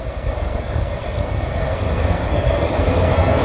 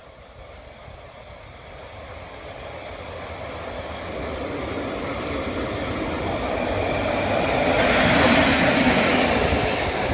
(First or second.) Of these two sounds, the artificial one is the first